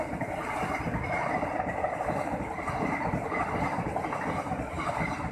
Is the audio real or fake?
real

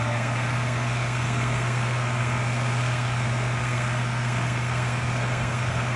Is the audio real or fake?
fake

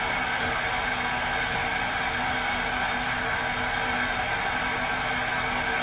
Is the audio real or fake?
real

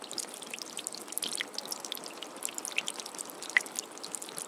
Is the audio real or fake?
real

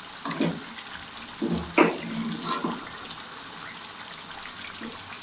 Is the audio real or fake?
real